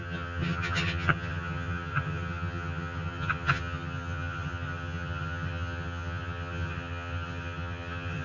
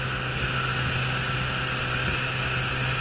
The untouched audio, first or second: second